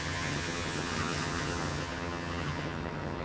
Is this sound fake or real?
fake